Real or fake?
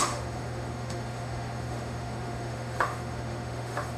fake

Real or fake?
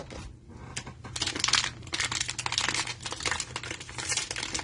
real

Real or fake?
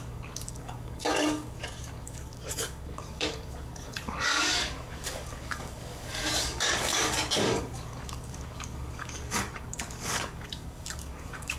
fake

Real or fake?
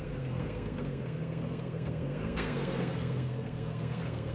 fake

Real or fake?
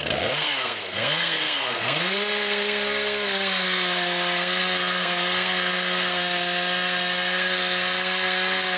fake